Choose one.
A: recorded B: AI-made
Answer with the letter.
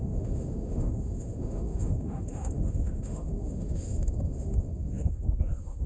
B